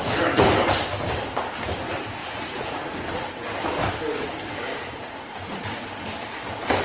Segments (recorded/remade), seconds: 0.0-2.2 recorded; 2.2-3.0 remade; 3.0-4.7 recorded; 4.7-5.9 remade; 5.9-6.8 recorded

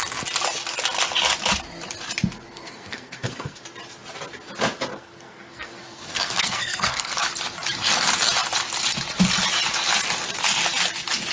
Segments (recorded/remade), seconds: 0.0-2.5 recorded; 2.5-3.6 remade; 3.6-4.9 recorded; 4.9-7.2 remade; 7.2-11.3 recorded

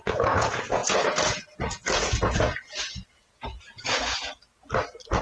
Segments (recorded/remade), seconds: 0.0-4.4 remade; 4.4-5.2 recorded